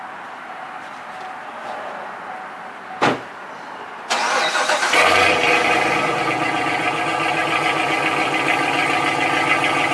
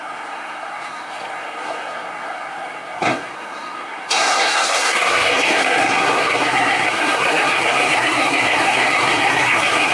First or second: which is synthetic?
second